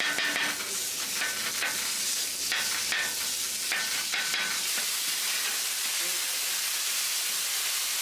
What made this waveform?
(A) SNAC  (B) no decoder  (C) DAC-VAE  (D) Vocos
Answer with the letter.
B